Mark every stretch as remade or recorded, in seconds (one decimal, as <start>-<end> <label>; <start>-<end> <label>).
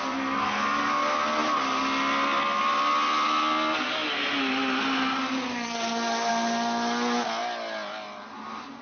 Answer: 0.0-8.8 recorded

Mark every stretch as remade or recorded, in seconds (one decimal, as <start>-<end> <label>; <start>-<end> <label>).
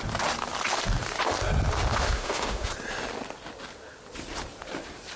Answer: 0.0-1.9 recorded; 1.9-2.7 remade; 2.7-5.2 recorded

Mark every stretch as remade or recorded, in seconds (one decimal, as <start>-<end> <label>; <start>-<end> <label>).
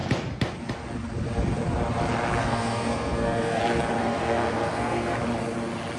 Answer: 0.0-2.4 recorded; 2.4-3.6 remade; 3.6-4.0 recorded; 4.0-5.2 remade; 5.2-6.0 recorded